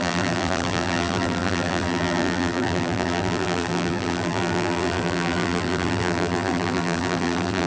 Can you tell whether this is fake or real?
fake